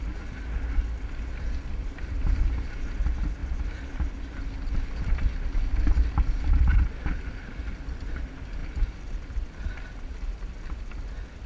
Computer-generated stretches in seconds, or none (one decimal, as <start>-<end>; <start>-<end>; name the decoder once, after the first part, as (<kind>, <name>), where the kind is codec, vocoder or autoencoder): 1.8-2.9 (vocoder, BigVGAN v2); 8.6-10.9